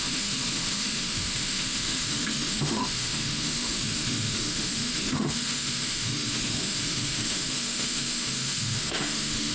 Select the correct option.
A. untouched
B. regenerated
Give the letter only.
B